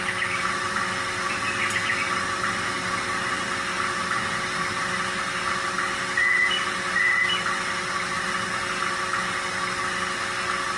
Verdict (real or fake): real